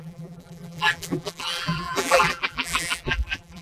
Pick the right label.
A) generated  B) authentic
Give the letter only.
A